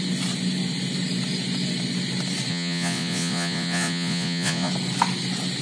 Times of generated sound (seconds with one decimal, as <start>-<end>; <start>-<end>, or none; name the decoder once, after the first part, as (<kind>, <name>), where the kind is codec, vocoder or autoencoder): 2.5-4.7 (vocoder, Vocos)